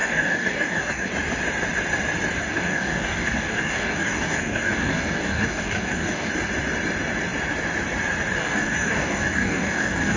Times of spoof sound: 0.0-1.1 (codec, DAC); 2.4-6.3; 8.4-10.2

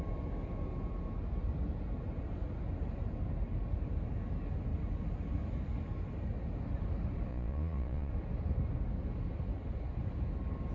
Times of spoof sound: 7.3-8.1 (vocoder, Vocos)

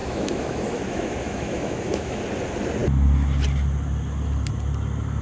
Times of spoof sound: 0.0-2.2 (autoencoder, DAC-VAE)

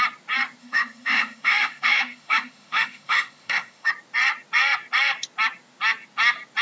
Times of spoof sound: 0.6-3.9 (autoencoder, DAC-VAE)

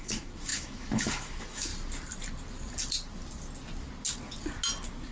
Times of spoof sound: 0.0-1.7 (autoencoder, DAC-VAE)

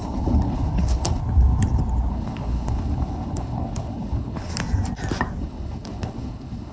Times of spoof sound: 0.0-1.2 (codec, HILCodec); 2.1-4.5; 5.4-6.7